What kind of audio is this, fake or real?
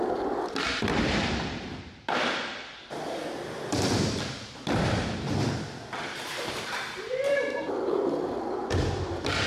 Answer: fake